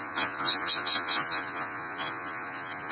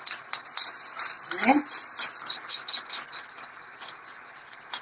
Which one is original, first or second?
second